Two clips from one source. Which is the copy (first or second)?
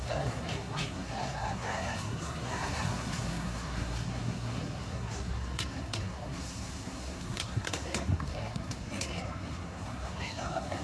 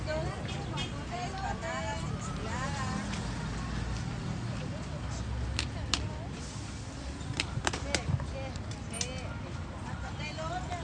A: first